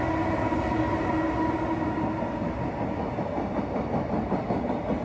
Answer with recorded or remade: recorded